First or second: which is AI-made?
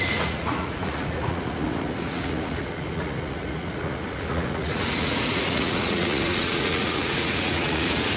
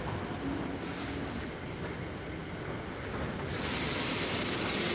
first